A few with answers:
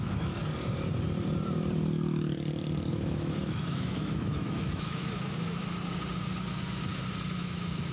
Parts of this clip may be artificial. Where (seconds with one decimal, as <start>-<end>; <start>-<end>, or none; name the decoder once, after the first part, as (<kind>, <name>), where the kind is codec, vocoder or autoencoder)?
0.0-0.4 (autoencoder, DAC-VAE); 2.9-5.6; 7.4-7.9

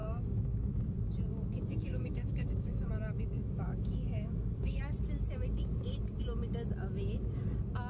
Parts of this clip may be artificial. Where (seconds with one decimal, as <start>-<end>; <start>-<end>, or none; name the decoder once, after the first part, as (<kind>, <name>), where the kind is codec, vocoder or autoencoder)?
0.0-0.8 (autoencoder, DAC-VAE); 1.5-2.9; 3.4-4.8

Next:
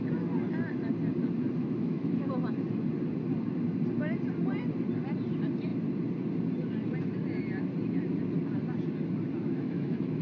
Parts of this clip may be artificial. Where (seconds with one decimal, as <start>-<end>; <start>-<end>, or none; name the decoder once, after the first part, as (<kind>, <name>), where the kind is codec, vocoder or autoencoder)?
1.6-2.3 (autoencoder, DAC-VAE); 9.4-10.2

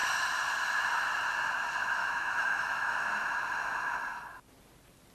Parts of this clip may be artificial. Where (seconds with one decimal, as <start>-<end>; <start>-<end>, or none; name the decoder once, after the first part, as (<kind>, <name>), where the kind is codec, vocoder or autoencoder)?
2.0-3.1 (autoencoder, DAC-VAE)

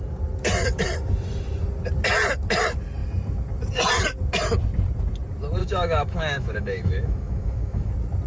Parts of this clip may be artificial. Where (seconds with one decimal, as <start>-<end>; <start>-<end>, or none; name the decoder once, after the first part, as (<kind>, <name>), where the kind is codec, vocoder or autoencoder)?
5.6-7.9 (autoencoder, DAC-VAE)